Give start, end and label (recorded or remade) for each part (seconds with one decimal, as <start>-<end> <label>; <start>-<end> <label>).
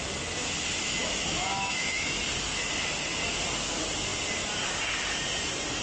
0.0-1.0 recorded; 1.0-2.2 remade; 2.2-5.8 recorded